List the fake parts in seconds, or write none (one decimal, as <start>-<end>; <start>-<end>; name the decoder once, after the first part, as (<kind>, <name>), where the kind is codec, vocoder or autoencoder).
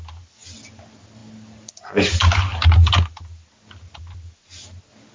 none